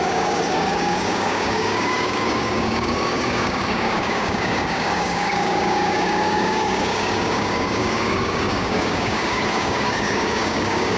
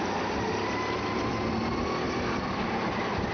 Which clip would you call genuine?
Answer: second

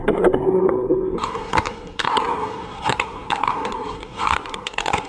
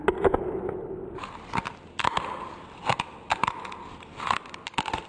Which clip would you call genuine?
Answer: second